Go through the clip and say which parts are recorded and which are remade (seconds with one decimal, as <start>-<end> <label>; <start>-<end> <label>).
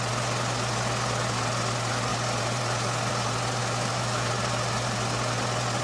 0.0-3.6 recorded; 3.6-4.3 remade; 4.3-5.8 recorded